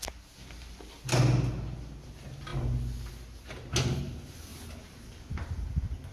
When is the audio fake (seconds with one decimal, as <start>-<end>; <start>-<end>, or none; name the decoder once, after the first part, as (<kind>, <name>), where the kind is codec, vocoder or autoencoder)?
none